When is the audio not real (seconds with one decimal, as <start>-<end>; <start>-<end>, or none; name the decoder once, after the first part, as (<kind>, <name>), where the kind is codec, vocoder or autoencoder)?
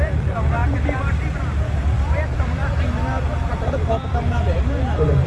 0.0-5.3 (vocoder, BigVGAN v2)